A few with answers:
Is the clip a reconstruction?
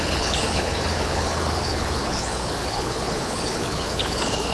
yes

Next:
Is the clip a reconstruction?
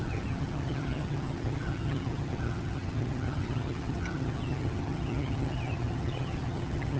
yes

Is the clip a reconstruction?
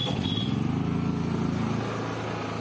no